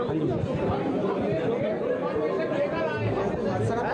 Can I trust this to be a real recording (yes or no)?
yes